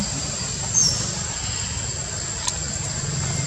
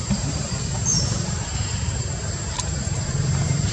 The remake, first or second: second